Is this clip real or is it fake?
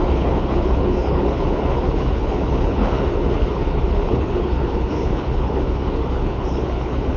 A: fake